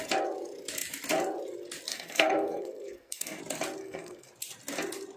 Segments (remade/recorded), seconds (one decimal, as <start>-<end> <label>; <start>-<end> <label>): 0.0-1.9 recorded; 1.9-3.4 remade; 3.4-3.8 recorded; 3.8-4.3 remade; 4.3-5.2 recorded